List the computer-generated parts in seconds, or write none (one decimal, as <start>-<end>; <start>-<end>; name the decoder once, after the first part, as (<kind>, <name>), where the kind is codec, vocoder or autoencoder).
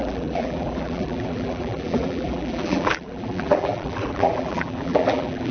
0.0-5.5 (vocoder, BigVGAN v2)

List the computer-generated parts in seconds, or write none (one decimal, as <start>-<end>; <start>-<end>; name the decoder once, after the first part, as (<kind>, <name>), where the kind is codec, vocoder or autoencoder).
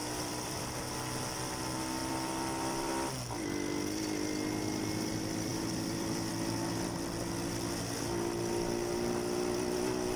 0.0-0.9 (vocoder, BigVGAN v2); 2.0-2.9; 5.5-6.3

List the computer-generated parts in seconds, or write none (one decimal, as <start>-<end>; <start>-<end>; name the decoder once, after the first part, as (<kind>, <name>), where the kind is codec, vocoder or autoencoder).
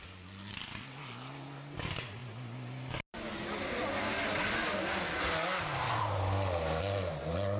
none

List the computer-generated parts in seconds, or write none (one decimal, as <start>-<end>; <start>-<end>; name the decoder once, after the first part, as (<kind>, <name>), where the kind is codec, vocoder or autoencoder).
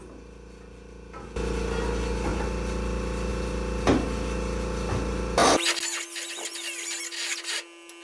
none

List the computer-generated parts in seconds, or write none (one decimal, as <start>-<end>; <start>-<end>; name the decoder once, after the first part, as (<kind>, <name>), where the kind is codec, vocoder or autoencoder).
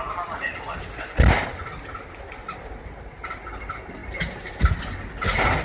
4.0-4.5 (vocoder, BigVGAN v2)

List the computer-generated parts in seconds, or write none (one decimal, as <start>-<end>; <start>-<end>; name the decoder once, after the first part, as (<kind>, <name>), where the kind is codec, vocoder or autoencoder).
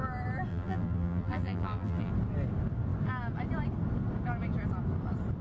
0.5-2.1 (vocoder, BigVGAN v2)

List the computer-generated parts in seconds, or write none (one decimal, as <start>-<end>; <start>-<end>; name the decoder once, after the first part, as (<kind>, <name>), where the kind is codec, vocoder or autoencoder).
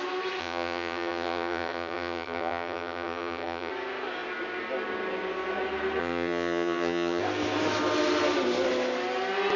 0.4-3.7 (vocoder, HiFi-GAN); 6.0-7.2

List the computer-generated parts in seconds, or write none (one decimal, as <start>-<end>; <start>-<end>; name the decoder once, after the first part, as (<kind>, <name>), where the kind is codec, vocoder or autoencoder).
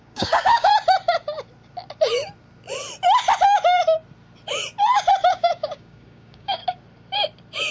0.0-0.7 (codec, DAC); 5.3-6.6